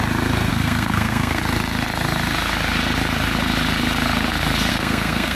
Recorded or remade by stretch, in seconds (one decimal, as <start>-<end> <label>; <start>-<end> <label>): 0.0-0.5 recorded; 0.5-1.4 remade; 1.4-4.7 recorded; 4.7-5.4 remade